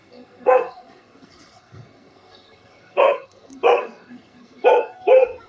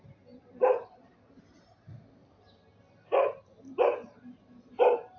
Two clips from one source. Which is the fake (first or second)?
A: first